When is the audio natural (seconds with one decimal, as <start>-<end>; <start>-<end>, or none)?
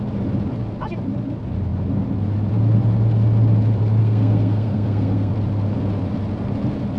0.0-4.0; 5.3-7.0